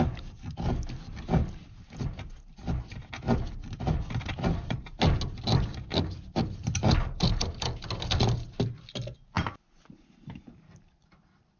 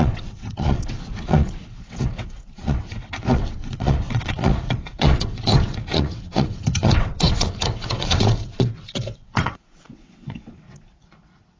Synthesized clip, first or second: second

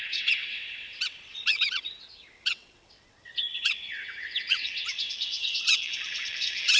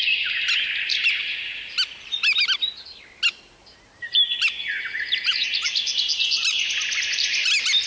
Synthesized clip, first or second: first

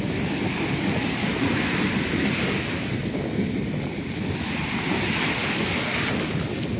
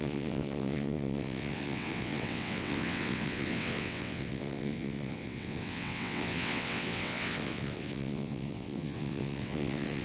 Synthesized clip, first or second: second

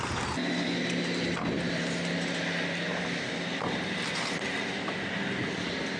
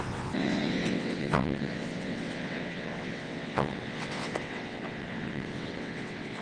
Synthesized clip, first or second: second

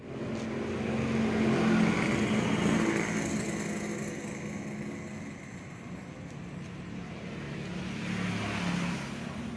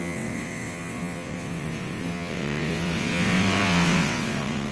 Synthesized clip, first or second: second